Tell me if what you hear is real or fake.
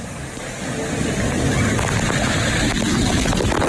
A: real